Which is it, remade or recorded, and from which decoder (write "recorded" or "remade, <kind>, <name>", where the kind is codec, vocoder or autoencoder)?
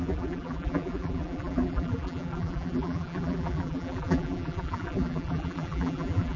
remade, vocoder, BigVGAN v2